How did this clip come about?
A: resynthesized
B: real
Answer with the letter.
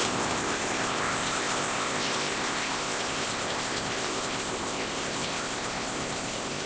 A